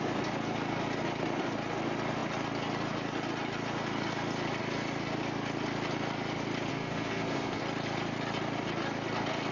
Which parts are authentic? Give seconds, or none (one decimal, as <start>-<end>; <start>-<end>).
0.0-6.7; 7.6-9.5